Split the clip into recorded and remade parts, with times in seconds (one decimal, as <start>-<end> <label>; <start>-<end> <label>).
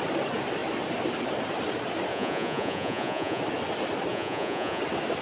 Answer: 0.0-2.1 recorded; 2.1-3.4 remade; 3.4-4.1 recorded; 4.1-4.8 remade; 4.8-5.2 recorded